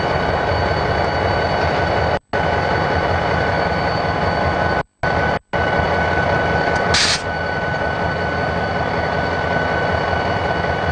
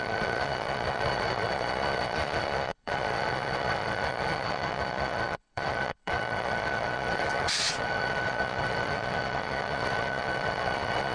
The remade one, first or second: second